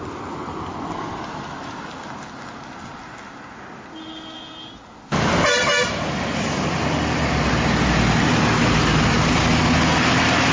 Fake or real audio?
real